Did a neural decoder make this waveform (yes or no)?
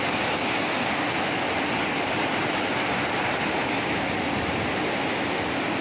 no